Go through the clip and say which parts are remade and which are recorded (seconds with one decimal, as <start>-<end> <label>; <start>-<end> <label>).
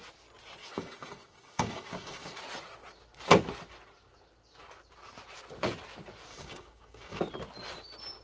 0.0-0.6 recorded; 0.6-2.4 remade; 2.4-6.3 recorded; 6.3-7.2 remade; 7.2-8.2 recorded